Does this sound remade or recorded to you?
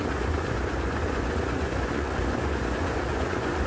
remade